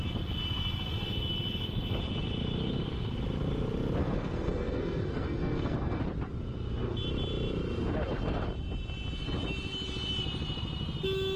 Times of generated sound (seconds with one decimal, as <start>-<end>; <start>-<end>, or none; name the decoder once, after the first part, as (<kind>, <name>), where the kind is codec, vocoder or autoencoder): 4.0-6.0 (codec, SNAC)